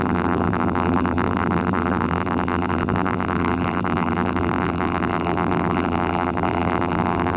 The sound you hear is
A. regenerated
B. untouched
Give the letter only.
A